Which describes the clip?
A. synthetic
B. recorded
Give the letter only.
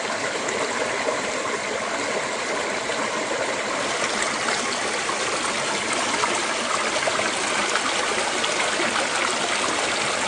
B